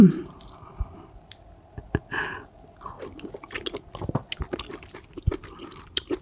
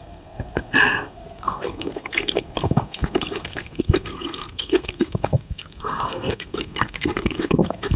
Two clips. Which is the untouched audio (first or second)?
first